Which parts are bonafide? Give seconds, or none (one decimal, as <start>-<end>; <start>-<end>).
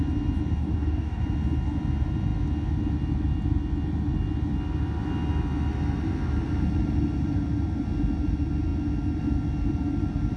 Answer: 0.0-0.6; 1.2-10.4